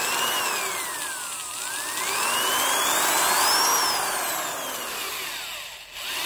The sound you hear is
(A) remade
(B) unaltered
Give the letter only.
B